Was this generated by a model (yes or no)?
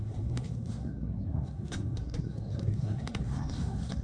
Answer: yes